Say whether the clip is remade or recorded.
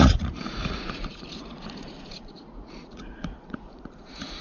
remade